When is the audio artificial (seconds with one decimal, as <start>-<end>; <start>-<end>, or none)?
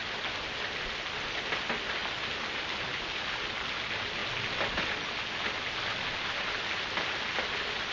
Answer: none